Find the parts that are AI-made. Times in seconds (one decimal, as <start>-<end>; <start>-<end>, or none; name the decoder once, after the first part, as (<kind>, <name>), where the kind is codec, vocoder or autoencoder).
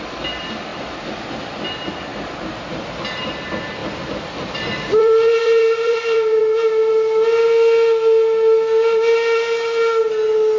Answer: 0.7-1.3 (vocoder, BigVGAN v2); 2.1-3.3; 3.8-6.4